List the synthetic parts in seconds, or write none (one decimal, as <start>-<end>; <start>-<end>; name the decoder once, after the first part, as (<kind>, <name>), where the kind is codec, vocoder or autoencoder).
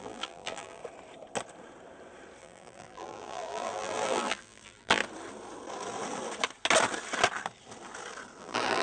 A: 0.0-0.8 (vocoder, BigVGAN v2); 2.4-5.0; 8.4-8.8